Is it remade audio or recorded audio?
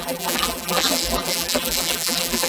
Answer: remade